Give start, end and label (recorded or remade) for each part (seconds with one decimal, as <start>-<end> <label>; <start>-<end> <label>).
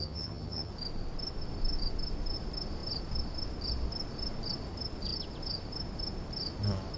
0.0-0.7 remade; 0.7-7.0 recorded